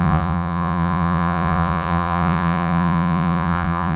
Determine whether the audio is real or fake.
fake